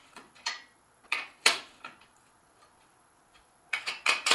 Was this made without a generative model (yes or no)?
no